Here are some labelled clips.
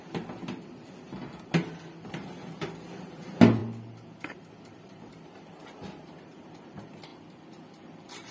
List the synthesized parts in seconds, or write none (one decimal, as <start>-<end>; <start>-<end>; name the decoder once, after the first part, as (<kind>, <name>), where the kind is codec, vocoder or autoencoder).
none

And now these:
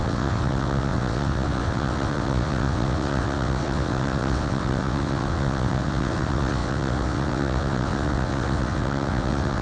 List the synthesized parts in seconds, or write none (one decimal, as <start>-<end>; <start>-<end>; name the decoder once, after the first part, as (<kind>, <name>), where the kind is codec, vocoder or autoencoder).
0.0-9.6 (vocoder, WaveNeXt)

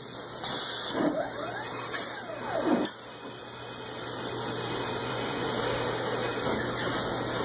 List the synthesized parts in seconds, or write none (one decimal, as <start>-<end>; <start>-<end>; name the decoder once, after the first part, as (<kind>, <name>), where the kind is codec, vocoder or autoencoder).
5.0-5.5 (vocoder, Vocos)